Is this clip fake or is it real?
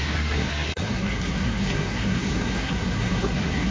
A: fake